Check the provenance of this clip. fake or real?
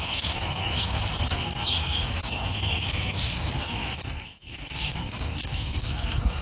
fake